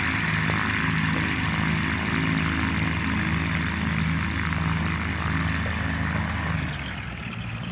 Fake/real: real